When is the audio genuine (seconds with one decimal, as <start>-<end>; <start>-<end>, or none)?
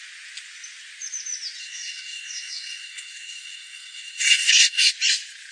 0.0-1.6; 4.9-5.5